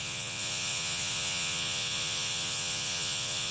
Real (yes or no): no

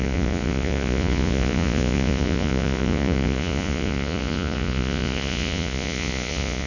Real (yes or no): no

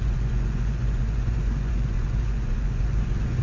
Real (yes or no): no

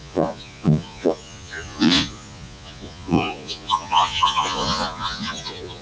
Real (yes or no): no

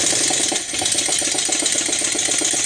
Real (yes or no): yes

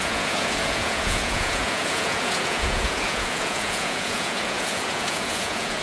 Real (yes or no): no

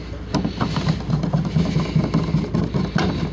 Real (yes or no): yes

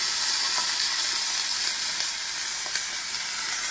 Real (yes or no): yes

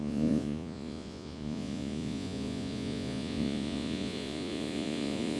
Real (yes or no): no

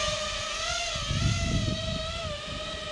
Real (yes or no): yes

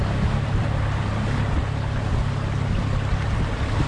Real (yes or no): yes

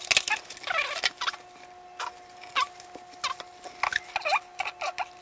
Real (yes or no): yes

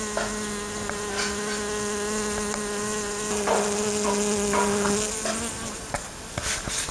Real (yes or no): yes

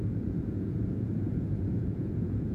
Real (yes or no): no